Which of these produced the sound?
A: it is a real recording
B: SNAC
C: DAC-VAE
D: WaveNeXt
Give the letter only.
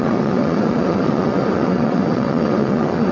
D